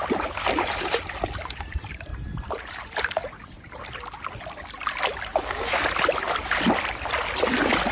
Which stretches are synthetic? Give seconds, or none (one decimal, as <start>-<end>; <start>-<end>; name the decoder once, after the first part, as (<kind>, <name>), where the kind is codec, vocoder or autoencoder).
5.3-5.8 (codec, DAC)